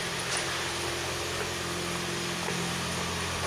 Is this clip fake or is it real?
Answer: real